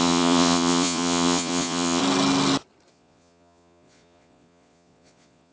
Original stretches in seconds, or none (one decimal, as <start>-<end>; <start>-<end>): 2.0-2.9